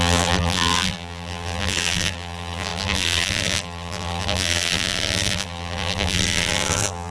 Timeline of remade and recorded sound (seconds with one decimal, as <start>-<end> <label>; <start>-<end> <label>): 0.0-7.1 remade